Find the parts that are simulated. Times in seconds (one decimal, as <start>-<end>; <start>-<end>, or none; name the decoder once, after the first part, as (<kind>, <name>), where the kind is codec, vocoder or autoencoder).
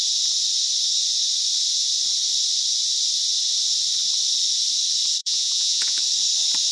5.2-6.0 (vocoder, Vocos)